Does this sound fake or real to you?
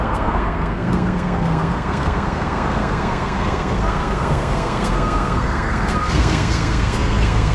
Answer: fake